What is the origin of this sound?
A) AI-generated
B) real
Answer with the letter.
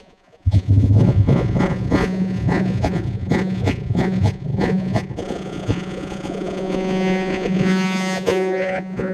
A